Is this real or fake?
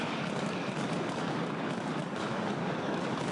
fake